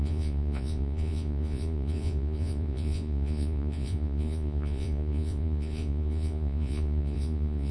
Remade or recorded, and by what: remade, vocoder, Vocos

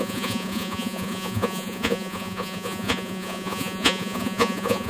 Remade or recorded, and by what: remade, vocoder, Vocos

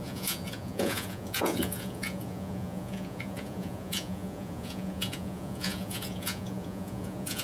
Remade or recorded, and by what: remade, vocoder, Vocos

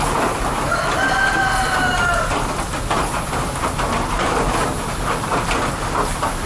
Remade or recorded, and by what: recorded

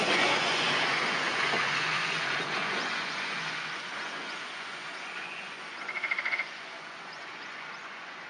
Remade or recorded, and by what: remade, vocoder, Vocos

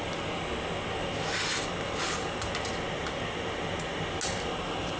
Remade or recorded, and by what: recorded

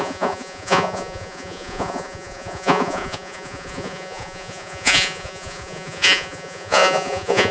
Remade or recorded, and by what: remade, vocoder, Vocos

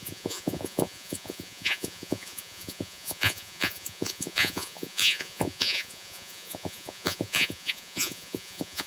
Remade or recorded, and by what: remade, vocoder, Vocos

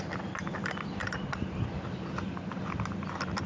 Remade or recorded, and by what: recorded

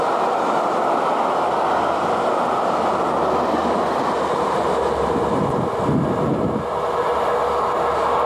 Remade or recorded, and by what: recorded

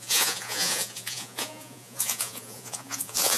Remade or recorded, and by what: remade, vocoder, Vocos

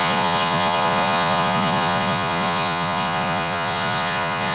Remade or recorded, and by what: remade, vocoder, Vocos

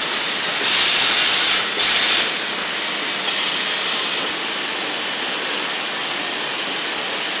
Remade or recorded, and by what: recorded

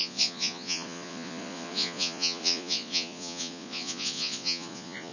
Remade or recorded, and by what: remade, vocoder, Vocos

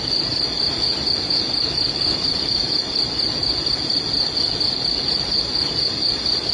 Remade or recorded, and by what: recorded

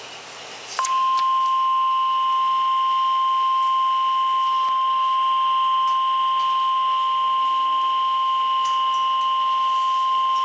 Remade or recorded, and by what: recorded